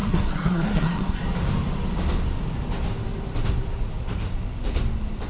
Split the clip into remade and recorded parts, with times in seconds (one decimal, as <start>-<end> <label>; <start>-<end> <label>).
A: 0.0-1.2 remade; 1.2-5.3 recorded